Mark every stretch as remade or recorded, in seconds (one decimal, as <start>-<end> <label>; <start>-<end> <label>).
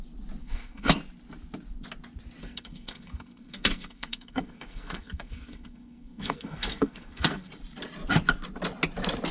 0.0-0.4 recorded; 0.4-1.0 remade; 1.0-2.4 recorded; 2.4-7.5 remade; 7.5-9.3 recorded